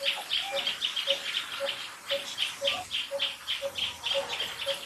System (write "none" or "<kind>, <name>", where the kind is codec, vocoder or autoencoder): none